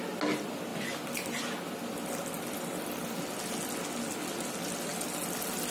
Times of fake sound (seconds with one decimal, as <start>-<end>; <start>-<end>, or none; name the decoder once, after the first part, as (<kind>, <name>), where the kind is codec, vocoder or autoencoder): none